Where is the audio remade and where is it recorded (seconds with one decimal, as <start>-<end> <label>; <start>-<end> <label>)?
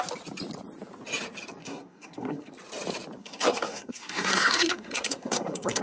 0.0-1.6 recorded; 1.6-2.5 remade; 2.5-3.2 recorded; 3.2-5.8 remade